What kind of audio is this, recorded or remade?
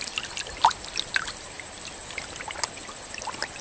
recorded